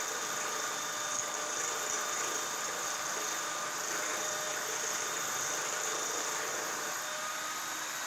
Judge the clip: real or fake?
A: fake